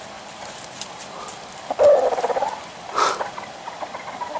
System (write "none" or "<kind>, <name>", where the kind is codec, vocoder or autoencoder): none